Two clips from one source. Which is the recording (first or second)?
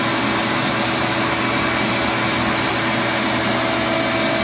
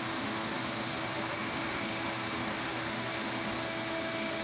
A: first